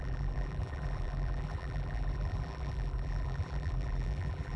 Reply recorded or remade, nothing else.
remade